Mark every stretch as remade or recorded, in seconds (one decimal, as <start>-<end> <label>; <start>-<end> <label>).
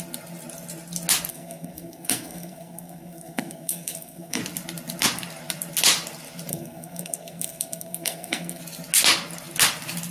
0.0-1.3 recorded; 1.3-4.4 remade; 4.4-6.5 recorded; 6.5-8.6 remade; 8.6-10.1 recorded